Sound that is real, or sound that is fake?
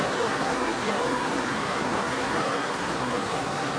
fake